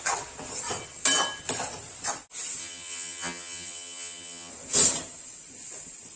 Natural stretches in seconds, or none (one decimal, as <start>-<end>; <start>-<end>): 0.0-2.6; 4.5-6.2